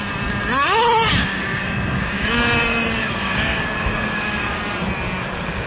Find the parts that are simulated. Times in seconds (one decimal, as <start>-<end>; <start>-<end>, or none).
1.2-2.3; 3.0-4.6